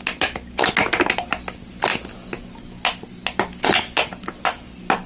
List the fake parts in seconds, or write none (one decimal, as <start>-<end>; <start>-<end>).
none